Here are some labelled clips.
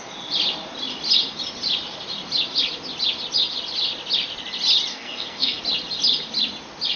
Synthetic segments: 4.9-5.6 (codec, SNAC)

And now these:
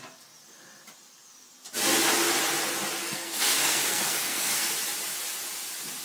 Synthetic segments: 3.0-4.7 (codec, SNAC)

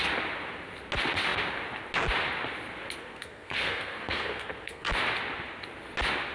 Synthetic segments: 3.0-4.9 (codec, SNAC)

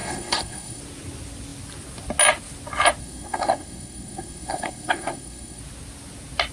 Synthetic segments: 0.0-0.8 (codec, SNAC); 3.0-5.6

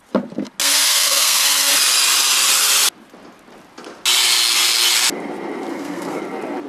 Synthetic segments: 0.6-1.7 (codec, SNAC); 5.7-6.2

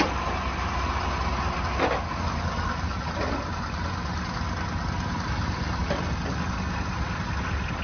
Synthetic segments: none